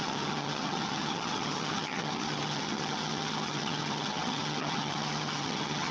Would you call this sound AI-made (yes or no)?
yes